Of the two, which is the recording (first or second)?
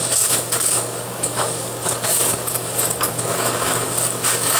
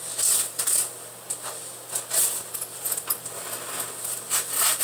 second